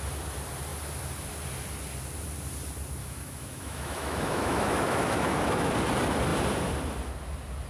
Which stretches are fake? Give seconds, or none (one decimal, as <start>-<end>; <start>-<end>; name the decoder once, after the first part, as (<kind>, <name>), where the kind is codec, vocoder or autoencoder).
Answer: 3.0-5.7 (autoencoder, DAC-VAE)